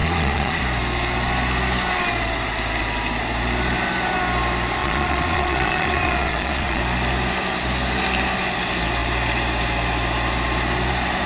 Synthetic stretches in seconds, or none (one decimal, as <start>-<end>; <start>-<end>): 0.0-0.6; 4.8-6.8